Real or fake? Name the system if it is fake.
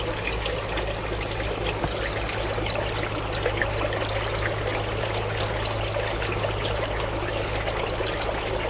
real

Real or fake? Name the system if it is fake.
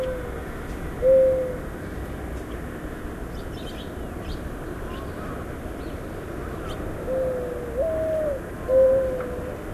real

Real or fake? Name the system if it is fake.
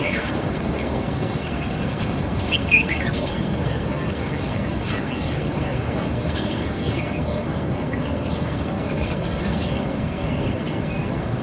fake, codec, SNAC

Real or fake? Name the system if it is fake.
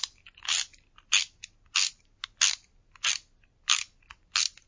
real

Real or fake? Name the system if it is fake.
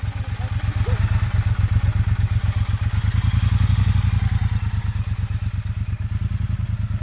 real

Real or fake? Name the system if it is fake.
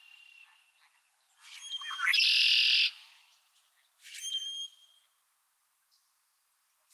real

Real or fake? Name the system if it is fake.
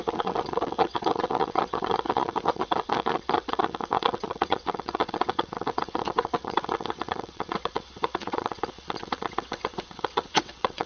fake, vocoder, WaveNeXt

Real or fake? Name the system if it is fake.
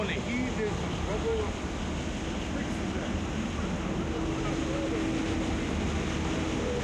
real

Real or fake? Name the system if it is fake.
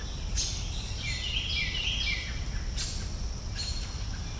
real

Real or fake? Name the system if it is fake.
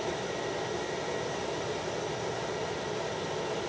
real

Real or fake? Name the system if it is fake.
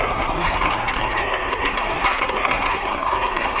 fake, codec, SNAC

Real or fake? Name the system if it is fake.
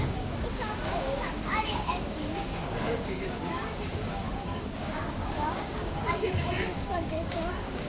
fake, codec, DAC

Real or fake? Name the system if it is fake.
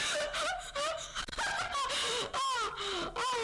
real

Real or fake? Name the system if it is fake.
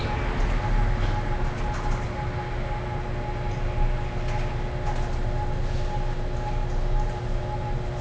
real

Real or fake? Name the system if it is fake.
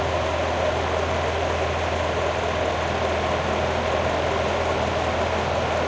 real